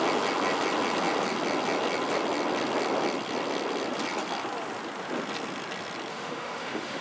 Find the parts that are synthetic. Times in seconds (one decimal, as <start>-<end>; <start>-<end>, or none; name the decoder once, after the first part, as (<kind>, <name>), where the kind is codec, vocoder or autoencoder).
6.1-7.0 (autoencoder, DAC-VAE)